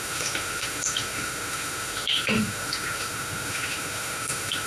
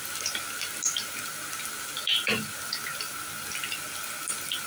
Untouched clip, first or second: second